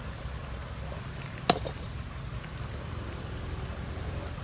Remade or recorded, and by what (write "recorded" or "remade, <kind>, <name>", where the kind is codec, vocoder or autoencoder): recorded